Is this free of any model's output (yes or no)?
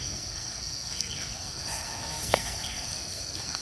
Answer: no